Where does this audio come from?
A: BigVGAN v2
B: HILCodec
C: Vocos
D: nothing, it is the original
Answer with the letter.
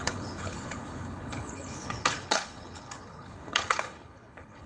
B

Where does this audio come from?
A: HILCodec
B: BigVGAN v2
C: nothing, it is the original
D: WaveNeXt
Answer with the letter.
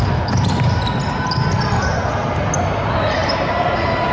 C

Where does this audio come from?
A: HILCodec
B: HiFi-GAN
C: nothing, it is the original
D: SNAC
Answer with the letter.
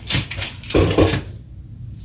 C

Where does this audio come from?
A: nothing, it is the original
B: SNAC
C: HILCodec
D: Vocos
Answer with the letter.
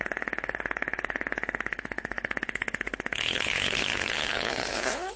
C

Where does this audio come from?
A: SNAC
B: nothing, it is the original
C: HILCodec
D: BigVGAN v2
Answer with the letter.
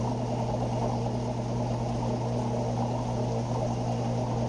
B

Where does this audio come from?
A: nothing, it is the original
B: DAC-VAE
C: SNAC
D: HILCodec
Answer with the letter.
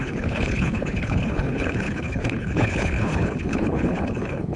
D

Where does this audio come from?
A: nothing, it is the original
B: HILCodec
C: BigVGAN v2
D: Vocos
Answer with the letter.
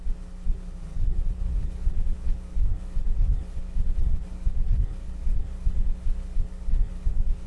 B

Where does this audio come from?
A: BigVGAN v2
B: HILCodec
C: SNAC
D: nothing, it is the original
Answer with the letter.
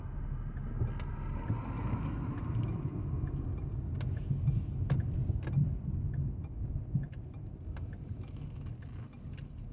D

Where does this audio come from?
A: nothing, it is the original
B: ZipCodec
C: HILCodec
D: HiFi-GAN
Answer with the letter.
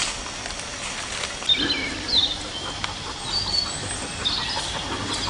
A